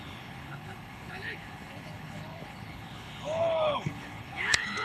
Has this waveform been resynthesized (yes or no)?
yes